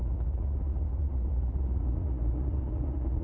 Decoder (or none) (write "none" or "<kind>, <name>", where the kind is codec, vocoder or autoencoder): vocoder, Vocos